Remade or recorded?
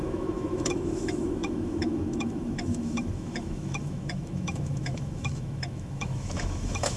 remade